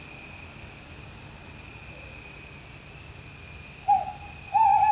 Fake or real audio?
real